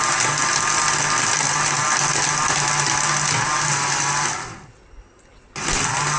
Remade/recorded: recorded